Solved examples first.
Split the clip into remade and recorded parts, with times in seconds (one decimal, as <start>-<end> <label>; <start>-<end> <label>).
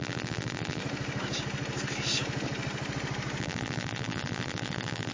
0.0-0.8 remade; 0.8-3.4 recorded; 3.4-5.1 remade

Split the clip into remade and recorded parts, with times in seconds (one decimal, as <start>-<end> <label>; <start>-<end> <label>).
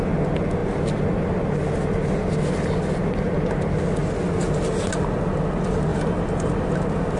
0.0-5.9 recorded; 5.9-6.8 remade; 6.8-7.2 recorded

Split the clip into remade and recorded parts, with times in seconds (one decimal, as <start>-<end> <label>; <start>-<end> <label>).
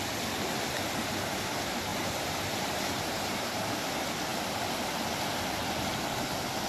0.0-1.9 recorded; 1.9-3.9 remade; 3.9-6.7 recorded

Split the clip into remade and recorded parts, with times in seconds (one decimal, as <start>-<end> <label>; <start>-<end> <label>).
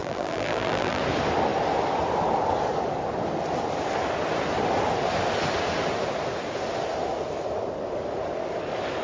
0.0-1.0 remade; 1.0-9.0 recorded